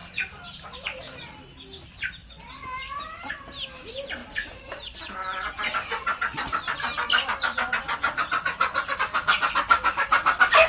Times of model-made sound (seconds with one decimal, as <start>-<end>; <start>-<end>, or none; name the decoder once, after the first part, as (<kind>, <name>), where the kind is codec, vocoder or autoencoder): 0.0-1.0 (vocoder, BigVGAN v2); 2.2-3.3